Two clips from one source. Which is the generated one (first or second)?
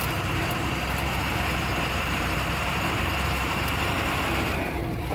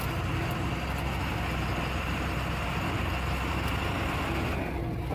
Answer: first